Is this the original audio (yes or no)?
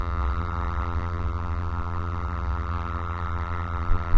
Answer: no